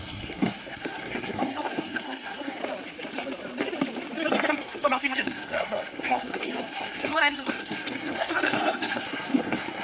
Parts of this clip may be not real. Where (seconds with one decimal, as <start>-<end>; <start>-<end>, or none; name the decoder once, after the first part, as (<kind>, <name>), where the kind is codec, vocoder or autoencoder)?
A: 0.0-2.6 (codec, SNAC); 4.3-9.8